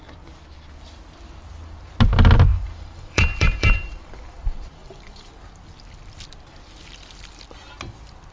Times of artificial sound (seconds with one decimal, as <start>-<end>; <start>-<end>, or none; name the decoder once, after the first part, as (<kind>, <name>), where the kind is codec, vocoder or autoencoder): 2.5-5.3 (vocoder, BigVGAN v2)